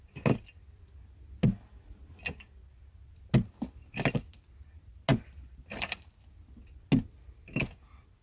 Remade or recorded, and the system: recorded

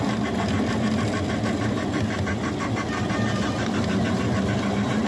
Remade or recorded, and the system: recorded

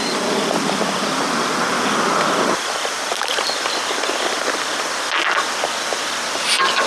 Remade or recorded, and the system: recorded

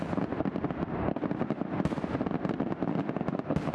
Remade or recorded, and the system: recorded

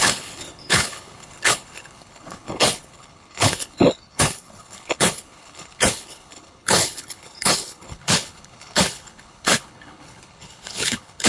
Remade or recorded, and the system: remade, codec, HILCodec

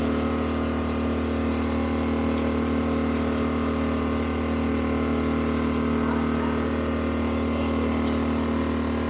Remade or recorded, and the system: recorded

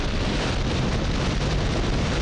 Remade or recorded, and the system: remade, vocoder, BigVGAN v2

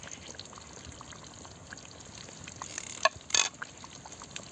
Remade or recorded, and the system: recorded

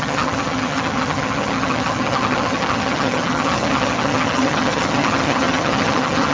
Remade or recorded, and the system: remade, vocoder, HiFi-GAN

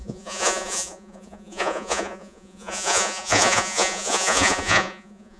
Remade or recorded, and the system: remade, vocoder, Vocos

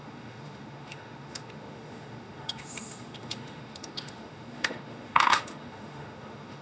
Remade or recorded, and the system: remade, autoencoder, DAC-VAE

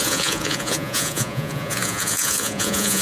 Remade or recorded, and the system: remade, vocoder, Vocos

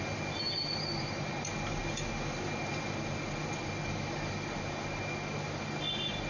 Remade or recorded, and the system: recorded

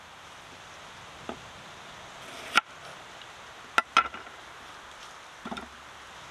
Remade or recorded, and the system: recorded